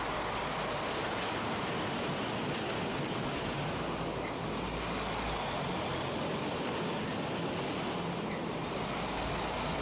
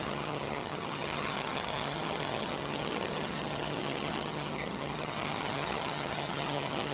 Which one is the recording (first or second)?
first